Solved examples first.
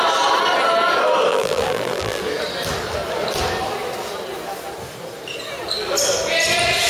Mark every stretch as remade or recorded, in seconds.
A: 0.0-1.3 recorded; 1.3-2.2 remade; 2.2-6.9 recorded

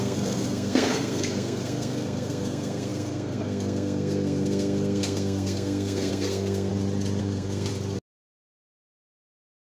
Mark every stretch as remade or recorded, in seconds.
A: 0.0-6.7 remade; 6.7-7.2 recorded; 7.2-7.7 remade; 7.7-8.3 recorded; 8.3-9.7 remade

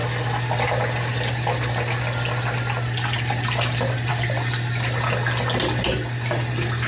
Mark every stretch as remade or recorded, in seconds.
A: 0.0-6.9 recorded

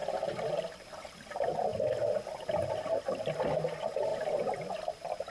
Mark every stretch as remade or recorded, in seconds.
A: 0.0-5.3 recorded

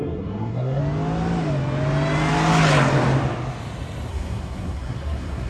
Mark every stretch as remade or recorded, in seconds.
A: 0.0-0.8 remade; 0.8-4.1 recorded; 4.1-5.5 remade

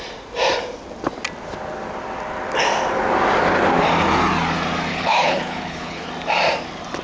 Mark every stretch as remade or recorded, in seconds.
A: 0.0-4.9 recorded; 4.9-6.1 remade; 6.1-7.0 recorded

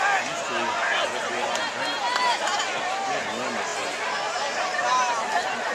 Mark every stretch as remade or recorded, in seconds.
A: 0.0-3.7 recorded; 3.7-4.6 remade; 4.6-5.7 recorded